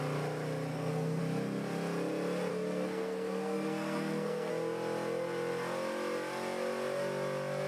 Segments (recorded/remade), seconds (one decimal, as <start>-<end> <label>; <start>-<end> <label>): 0.0-0.7 recorded; 0.7-1.2 remade; 1.2-2.5 recorded; 2.5-4.5 remade; 4.5-7.7 recorded